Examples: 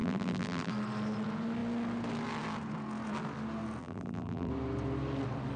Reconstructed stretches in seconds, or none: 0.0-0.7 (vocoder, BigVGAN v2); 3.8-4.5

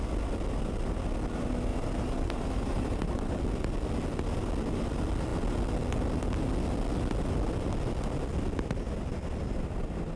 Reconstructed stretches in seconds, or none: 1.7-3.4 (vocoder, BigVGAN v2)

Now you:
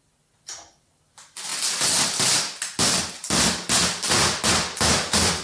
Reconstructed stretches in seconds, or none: none

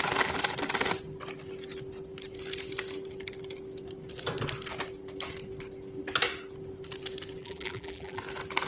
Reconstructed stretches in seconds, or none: 7.4-8.2 (vocoder, BigVGAN v2)